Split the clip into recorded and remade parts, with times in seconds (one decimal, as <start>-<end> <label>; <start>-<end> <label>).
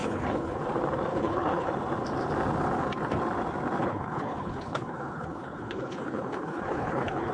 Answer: 0.0-0.6 remade; 0.6-1.1 recorded; 1.1-1.7 remade; 1.7-3.8 recorded; 3.8-7.3 remade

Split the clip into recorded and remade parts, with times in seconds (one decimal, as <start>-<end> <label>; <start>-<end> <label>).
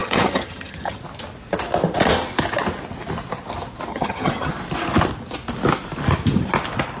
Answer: 0.0-1.0 remade; 1.0-3.9 recorded; 3.9-4.5 remade; 4.5-7.0 recorded